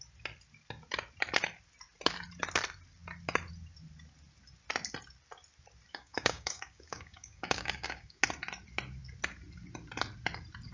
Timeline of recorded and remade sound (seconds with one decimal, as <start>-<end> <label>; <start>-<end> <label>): 0.0-5.9 recorded; 5.9-8.2 remade; 8.2-10.7 recorded